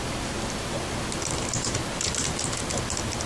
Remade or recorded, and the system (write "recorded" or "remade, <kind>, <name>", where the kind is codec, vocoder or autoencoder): recorded